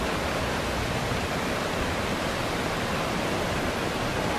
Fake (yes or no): yes